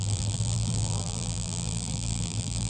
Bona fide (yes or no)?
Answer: no